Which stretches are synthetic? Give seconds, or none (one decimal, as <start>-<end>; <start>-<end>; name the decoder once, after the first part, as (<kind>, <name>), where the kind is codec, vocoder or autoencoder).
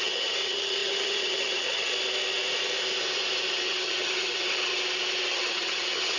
0.0-1.9 (vocoder, HiFi-GAN); 3.5-4.7; 5.3-6.2